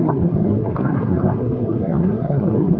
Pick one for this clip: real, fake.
fake